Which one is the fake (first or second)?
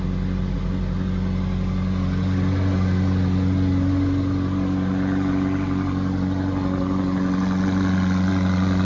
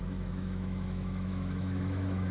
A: second